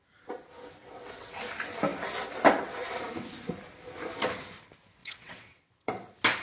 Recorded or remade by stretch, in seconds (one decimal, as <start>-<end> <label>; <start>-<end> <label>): 0.0-0.8 recorded; 0.8-1.4 remade; 1.4-5.0 recorded; 5.0-5.9 remade; 5.9-6.4 recorded